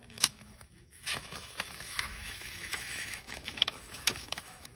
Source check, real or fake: fake